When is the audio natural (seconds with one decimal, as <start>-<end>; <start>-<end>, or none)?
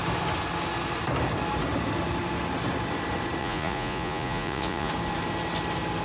0.0-3.4; 4.9-6.0